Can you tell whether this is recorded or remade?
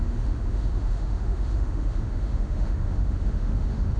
remade